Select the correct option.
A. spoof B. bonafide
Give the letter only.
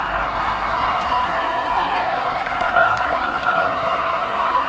A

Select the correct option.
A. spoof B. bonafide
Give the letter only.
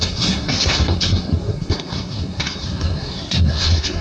A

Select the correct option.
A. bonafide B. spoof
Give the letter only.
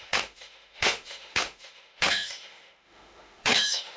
B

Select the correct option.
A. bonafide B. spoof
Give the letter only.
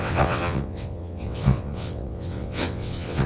B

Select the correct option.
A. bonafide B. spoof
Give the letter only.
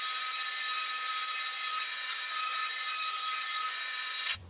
B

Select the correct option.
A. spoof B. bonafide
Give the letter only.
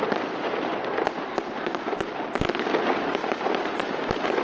B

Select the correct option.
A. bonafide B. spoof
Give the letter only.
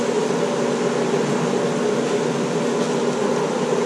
A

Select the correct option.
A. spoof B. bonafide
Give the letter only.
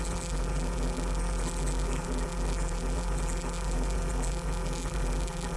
A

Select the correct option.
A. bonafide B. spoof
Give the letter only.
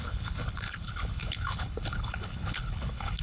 B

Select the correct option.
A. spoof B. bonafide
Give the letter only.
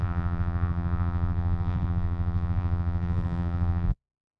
A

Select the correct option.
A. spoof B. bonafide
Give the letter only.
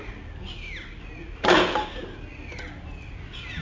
B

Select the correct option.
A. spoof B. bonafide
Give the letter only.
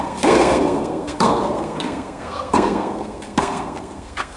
A